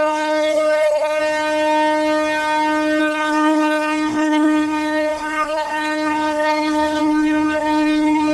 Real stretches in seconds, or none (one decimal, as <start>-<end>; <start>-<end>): 1.2-3.0